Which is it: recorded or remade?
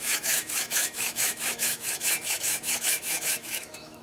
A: remade